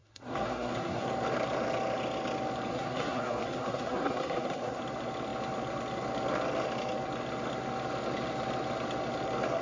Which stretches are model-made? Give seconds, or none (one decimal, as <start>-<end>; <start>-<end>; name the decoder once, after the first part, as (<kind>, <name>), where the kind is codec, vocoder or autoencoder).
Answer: 0.0-1.1 (codec, SNAC); 2.7-4.8